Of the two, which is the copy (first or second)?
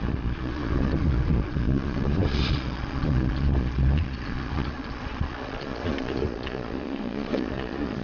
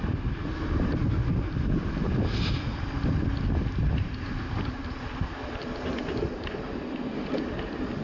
first